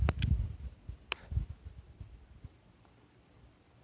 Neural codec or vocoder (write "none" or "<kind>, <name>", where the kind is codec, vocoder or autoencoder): none